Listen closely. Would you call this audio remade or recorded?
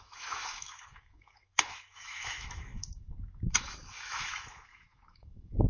remade